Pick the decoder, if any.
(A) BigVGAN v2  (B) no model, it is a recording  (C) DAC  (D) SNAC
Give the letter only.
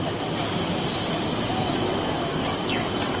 B